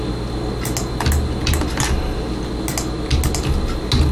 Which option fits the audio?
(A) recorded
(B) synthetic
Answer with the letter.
A